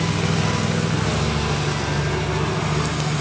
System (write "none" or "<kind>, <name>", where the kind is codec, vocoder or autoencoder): none